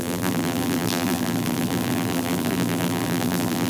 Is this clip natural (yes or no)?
no